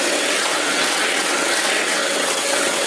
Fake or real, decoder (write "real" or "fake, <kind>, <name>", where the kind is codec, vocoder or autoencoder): fake, vocoder, WaveNeXt